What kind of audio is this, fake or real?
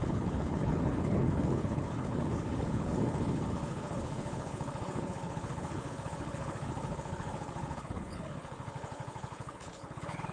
fake